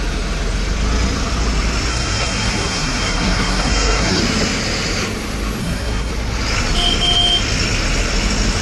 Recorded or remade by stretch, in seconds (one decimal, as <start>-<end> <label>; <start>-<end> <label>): 0.0-1.9 recorded; 1.9-4.2 remade; 4.2-5.6 recorded; 5.6-6.1 remade; 6.1-8.6 recorded